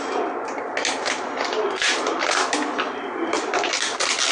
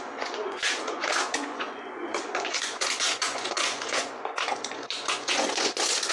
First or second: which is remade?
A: second